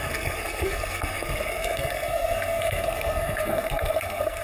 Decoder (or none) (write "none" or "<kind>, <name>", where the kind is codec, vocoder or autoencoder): codec, SNAC